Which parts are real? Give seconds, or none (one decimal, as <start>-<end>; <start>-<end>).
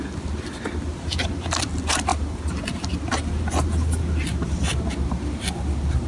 0.0-6.1